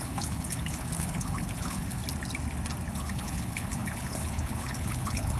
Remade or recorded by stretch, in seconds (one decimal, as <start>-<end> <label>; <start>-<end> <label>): 0.0-2.0 remade; 2.0-2.9 recorded; 2.9-5.4 remade